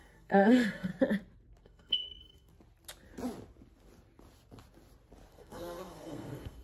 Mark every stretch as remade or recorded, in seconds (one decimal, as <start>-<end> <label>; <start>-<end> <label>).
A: 0.0-0.9 remade; 0.9-1.6 recorded; 1.6-2.5 remade; 2.5-5.3 recorded; 5.3-6.6 remade